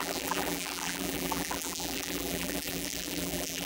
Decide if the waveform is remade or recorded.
remade